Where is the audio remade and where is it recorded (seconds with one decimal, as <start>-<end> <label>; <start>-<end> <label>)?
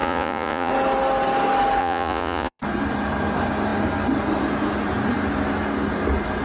0.0-0.7 remade; 0.7-1.8 recorded; 1.8-2.6 remade; 2.6-6.4 recorded